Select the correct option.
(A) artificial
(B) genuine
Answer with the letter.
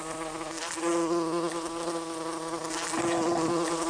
B